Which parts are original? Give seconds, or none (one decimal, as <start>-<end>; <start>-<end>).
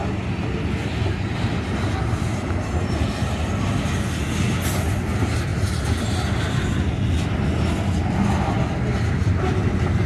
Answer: 0.0-10.1